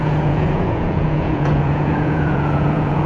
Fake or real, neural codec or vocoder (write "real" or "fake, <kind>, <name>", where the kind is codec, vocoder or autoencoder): fake, vocoder, Vocos